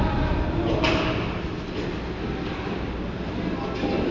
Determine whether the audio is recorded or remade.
recorded